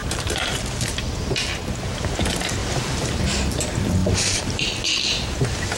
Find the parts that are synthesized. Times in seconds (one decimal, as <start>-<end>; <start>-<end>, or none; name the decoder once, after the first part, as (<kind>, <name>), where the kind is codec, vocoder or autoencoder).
0.0-1.1 (vocoder, BigVGAN v2); 2.6-3.2; 4.0-4.6